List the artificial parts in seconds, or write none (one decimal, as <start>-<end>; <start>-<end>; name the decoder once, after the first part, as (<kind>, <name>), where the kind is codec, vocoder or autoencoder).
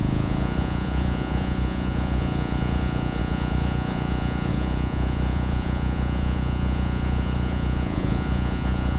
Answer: 0.0-9.0 (vocoder, Vocos)